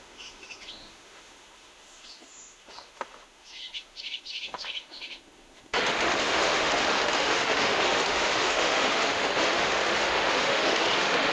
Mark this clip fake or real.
fake